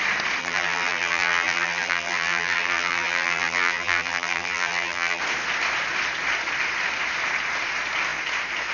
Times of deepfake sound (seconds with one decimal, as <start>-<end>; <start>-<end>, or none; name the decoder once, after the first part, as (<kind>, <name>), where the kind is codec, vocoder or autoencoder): 0.4-5.2 (vocoder, BigVGAN v2)